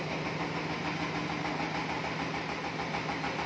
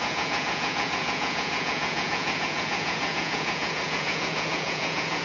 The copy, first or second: second